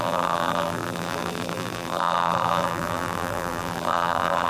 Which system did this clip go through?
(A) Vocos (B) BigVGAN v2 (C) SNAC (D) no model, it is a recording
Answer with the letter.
B